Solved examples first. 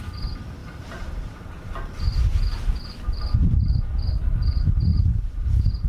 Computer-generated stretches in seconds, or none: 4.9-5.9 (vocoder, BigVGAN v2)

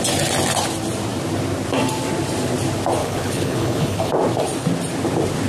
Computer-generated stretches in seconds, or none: 3.0-4.1 (codec, HILCodec)